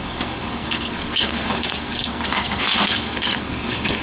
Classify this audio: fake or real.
fake